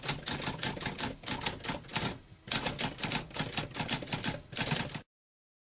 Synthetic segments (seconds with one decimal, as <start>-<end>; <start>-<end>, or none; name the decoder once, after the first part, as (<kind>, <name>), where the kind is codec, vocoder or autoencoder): none